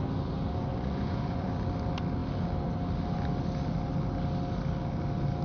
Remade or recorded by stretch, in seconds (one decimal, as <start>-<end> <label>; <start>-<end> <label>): 0.0-0.7 recorded; 0.7-1.5 remade; 1.5-5.4 recorded